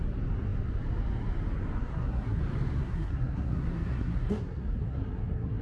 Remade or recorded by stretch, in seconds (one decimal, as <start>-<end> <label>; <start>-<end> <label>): 0.0-1.8 recorded; 1.8-2.4 remade; 2.4-2.8 recorded; 2.8-5.6 remade